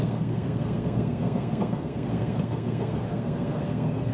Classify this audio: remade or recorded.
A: remade